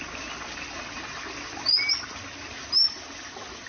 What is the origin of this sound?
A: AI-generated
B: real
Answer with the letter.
B